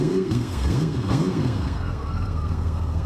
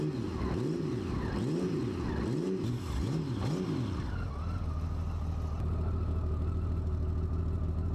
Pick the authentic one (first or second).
second